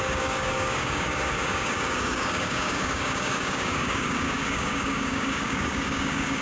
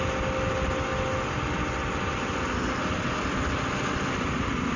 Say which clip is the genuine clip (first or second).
second